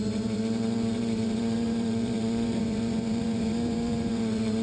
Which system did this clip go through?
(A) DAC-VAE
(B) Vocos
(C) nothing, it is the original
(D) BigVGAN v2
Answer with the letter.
B